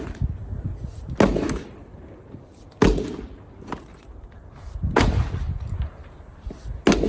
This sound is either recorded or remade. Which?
recorded